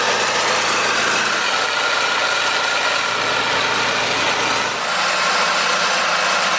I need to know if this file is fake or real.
real